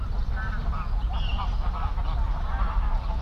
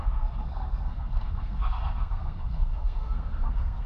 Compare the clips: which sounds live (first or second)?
first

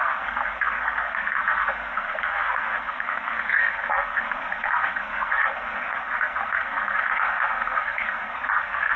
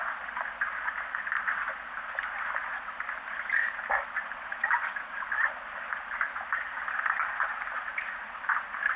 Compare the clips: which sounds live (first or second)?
second